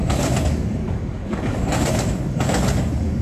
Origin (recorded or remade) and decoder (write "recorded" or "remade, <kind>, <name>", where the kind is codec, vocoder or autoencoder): remade, codec, DAC